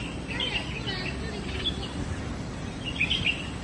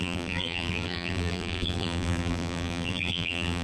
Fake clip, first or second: second